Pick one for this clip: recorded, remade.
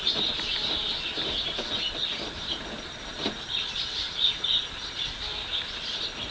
recorded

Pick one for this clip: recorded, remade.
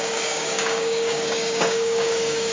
remade